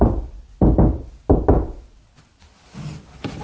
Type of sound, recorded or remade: recorded